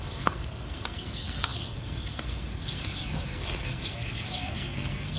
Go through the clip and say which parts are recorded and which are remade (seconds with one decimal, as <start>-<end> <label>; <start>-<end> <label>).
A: 0.0-5.2 remade